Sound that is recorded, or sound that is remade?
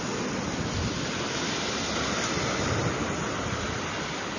recorded